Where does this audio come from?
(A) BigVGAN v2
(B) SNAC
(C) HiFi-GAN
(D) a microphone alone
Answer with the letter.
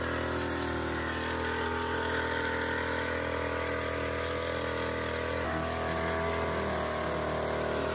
D